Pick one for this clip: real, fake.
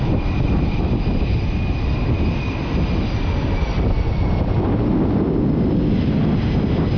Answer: real